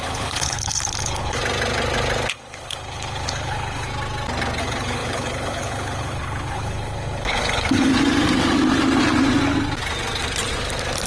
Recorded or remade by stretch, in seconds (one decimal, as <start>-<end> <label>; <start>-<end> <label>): 0.0-1.4 remade; 1.4-2.3 recorded; 2.3-3.9 remade; 3.9-4.6 recorded; 4.6-7.9 remade; 7.9-11.1 recorded

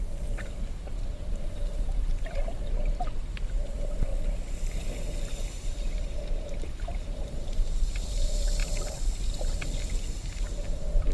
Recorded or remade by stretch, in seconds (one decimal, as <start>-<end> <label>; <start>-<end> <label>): 0.0-4.1 remade; 4.1-5.6 recorded; 5.6-8.6 remade; 8.6-11.1 recorded